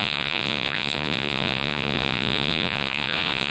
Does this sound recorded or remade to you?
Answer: remade